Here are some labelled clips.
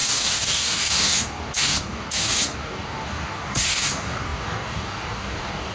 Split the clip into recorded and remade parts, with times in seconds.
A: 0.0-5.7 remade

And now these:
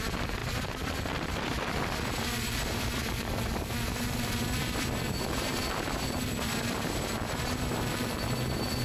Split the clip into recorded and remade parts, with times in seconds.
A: 0.0-8.8 remade

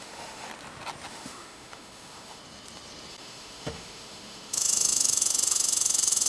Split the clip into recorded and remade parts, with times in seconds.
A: 0.0-0.5 remade; 0.5-1.1 recorded; 1.1-2.4 remade; 2.4-3.1 recorded; 3.1-6.3 remade

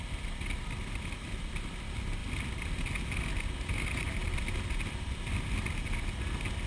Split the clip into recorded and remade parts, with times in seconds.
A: 0.0-6.7 recorded

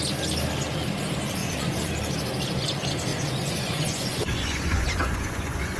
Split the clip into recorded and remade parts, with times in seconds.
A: 0.0-1.4 recorded; 1.4-1.9 remade; 1.9-3.1 recorded; 3.1-5.8 remade

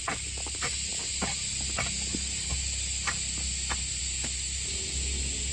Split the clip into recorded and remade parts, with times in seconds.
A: 0.0-5.5 recorded

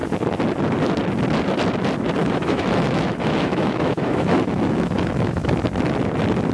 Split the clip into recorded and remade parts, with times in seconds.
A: 0.0-2.2 recorded; 2.2-5.5 remade; 5.5-6.5 recorded

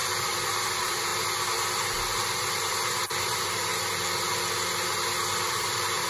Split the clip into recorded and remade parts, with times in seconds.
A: 0.0-1.1 remade; 1.1-3.2 recorded; 3.2-3.7 remade; 3.7-5.5 recorded; 5.5-6.1 remade